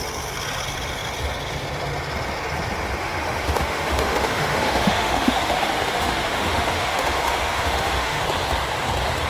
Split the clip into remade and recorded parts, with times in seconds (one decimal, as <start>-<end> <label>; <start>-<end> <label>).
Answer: 0.0-3.0 recorded; 3.0-8.2 remade; 8.2-9.3 recorded